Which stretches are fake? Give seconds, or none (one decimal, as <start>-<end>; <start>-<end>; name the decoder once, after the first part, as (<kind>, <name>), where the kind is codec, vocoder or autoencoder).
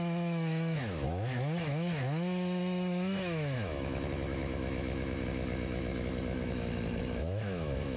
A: 0.0-8.0 (autoencoder, DAC-VAE)